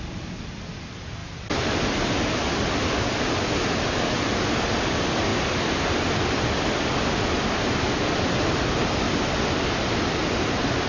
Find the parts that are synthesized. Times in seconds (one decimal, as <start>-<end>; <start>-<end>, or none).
5.3-7.5